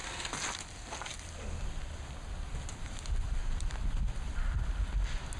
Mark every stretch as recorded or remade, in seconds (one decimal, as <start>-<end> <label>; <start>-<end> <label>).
0.0-5.4 recorded